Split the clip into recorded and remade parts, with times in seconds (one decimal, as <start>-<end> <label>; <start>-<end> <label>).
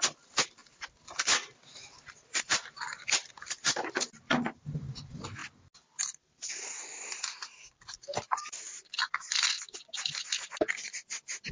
0.0-11.5 recorded